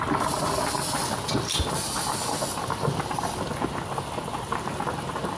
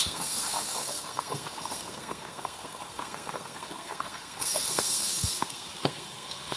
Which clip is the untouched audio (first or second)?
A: first